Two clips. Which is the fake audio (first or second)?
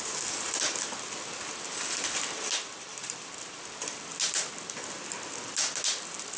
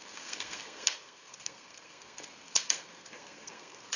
second